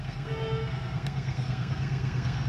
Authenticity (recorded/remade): remade